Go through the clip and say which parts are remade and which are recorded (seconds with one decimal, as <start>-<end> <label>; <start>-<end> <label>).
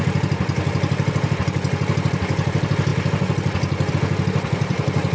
0.0-5.1 recorded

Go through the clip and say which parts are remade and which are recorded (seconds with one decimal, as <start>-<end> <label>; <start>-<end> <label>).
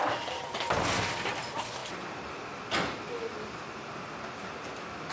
0.0-5.1 recorded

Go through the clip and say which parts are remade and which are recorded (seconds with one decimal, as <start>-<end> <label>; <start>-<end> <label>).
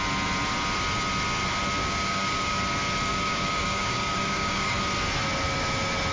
0.0-1.8 recorded; 1.8-2.6 remade; 2.6-3.1 recorded; 3.1-4.8 remade; 4.8-6.1 recorded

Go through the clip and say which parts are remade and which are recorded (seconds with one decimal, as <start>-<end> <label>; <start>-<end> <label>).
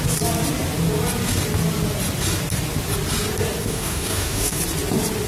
0.0-3.6 recorded; 3.6-4.6 remade; 4.6-5.3 recorded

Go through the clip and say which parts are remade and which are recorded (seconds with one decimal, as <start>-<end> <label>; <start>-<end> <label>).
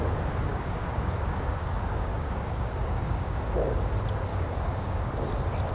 0.0-0.5 recorded; 0.5-3.9 remade; 3.9-4.3 recorded; 4.3-5.1 remade; 5.1-5.7 recorded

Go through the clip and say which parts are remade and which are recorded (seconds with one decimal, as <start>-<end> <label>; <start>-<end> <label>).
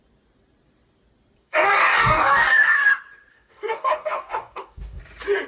0.0-1.4 recorded; 1.4-2.9 remade; 2.9-3.3 recorded; 3.3-5.0 remade; 5.0-5.5 recorded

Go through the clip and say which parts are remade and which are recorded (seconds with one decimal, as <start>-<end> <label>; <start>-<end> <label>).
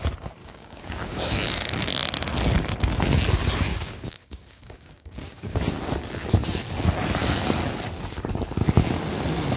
0.0-0.4 recorded; 0.4-1.4 remade; 1.4-3.7 recorded; 3.7-5.6 remade; 5.6-9.6 recorded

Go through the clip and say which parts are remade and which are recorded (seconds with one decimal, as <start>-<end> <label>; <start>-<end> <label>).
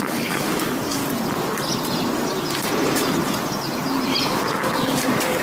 0.0-1.0 remade; 1.0-4.2 recorded; 4.2-5.4 remade